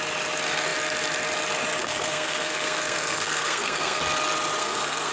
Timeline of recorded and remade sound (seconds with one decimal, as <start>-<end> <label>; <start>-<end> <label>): 0.0-1.8 recorded; 1.8-4.0 remade; 4.0-4.6 recorded; 4.6-5.1 remade